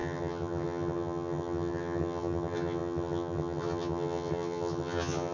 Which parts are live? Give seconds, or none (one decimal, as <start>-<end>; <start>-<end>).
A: none